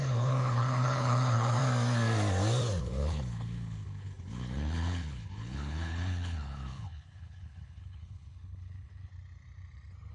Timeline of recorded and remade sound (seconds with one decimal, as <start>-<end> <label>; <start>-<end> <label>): 0.0-1.6 remade; 1.6-2.8 recorded; 2.8-9.1 remade; 9.1-10.1 recorded